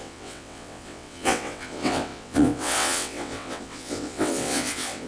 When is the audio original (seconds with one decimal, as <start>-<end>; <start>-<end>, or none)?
none